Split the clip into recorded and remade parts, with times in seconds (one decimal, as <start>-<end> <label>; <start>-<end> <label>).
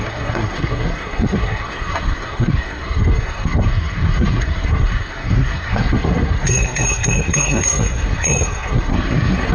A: 0.0-9.5 remade